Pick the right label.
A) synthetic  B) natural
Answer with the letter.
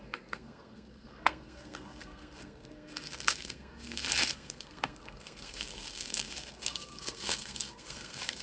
A